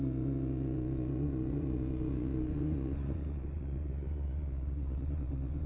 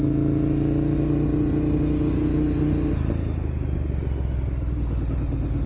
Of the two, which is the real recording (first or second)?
second